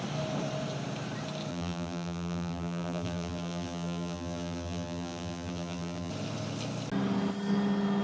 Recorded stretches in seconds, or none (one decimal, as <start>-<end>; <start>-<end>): 0.0-1.5; 6.1-8.0

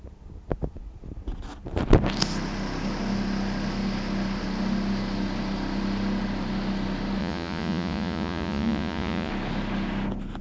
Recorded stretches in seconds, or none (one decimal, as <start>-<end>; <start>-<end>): 0.0-7.2; 9.3-10.4

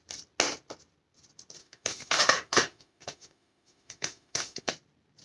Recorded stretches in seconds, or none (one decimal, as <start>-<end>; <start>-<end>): 0.0-1.6; 4.7-5.2

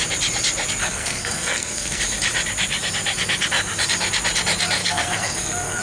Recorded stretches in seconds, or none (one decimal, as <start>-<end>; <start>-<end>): 0.0-0.8; 2.0-4.8

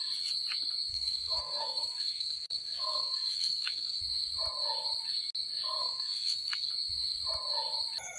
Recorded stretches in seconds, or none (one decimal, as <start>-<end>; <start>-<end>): 0.0-0.9; 4.0-5.8; 6.7-8.2

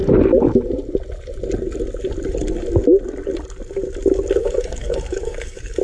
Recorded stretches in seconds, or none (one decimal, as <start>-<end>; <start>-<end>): 0.0-4.4